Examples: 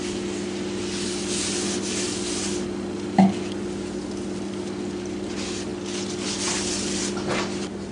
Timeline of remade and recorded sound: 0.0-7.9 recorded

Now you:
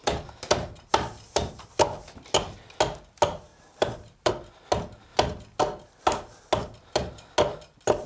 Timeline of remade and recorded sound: 0.0-3.5 recorded; 3.5-4.3 remade; 4.3-8.1 recorded

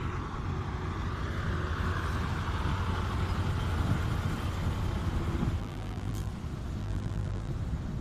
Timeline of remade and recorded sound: 0.0-5.6 recorded; 5.6-6.3 remade; 6.3-6.8 recorded; 6.8-7.5 remade; 7.5-8.0 recorded

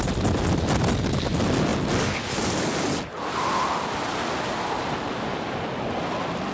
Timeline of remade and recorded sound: 0.0-6.5 recorded

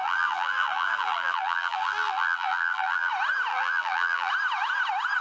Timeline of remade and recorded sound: 0.0-3.1 remade; 3.1-3.5 recorded; 3.5-4.3 remade; 4.3-5.2 recorded